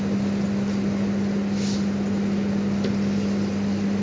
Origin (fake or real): real